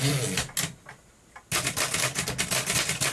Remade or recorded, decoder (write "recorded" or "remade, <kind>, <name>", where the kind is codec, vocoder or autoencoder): recorded